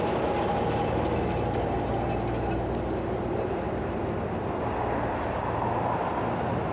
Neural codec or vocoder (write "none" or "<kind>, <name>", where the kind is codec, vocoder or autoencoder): none